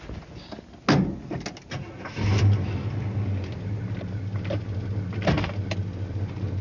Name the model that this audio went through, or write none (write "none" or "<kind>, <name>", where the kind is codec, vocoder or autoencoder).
none